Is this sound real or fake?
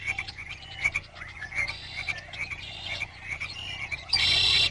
fake